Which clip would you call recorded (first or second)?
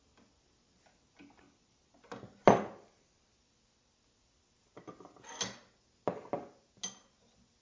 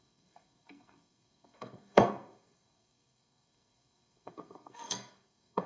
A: first